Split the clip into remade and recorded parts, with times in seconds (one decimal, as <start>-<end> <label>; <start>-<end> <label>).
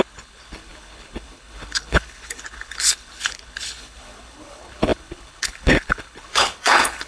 0.0-7.1 remade